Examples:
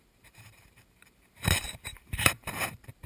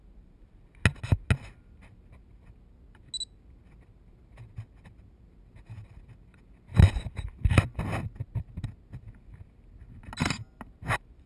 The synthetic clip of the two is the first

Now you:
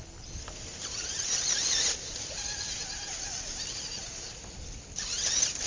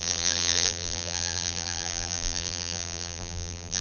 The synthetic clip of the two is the second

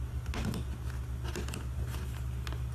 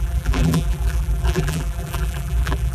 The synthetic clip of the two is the second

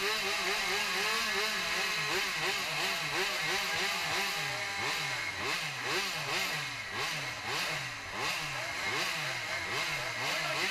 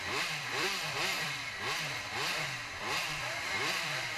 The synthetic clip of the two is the second